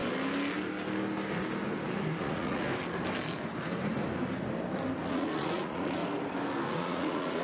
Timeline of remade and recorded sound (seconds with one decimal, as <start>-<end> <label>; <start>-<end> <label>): 0.0-2.2 recorded; 2.2-2.7 remade; 2.7-5.1 recorded; 5.1-6.0 remade; 6.0-6.7 recorded; 6.7-7.4 remade